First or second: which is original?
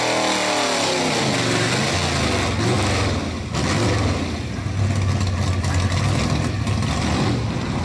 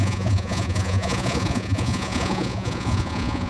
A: first